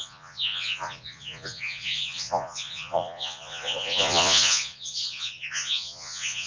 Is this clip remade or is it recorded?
remade